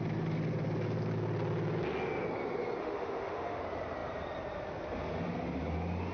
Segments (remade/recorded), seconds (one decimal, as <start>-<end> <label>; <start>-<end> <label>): 0.0-2.8 recorded; 2.8-3.6 remade; 3.6-6.1 recorded